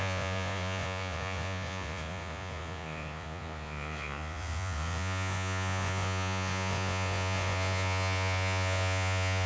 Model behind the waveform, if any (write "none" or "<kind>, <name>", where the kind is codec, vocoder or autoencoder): vocoder, Vocos